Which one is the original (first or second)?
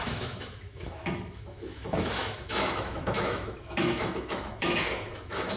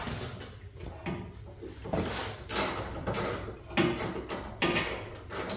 second